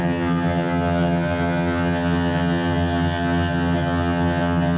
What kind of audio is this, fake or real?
fake